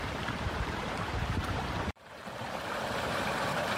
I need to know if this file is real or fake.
fake